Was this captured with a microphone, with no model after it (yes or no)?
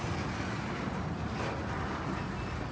yes